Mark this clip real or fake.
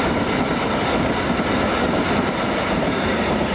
real